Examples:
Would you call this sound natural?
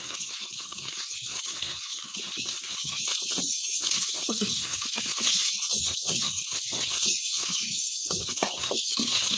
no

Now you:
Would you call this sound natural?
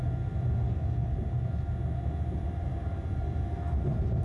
yes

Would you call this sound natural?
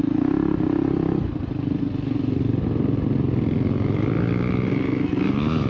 yes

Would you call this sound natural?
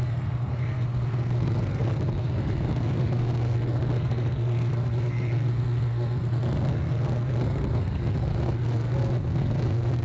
no